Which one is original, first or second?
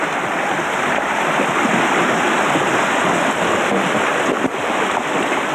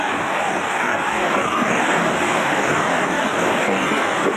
first